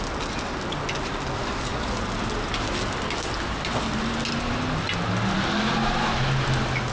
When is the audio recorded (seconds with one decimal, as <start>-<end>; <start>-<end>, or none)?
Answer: 0.0-6.9